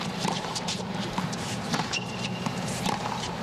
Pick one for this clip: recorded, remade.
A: remade